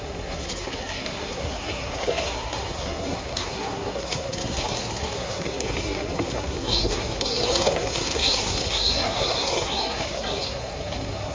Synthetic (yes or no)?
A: yes